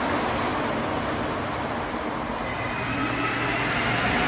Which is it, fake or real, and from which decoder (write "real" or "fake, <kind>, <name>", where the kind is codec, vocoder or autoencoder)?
real